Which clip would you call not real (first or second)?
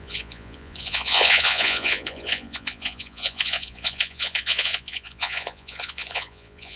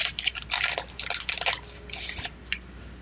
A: first